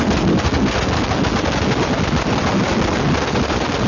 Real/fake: real